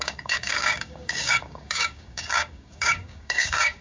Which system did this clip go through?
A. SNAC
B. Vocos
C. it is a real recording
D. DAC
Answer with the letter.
D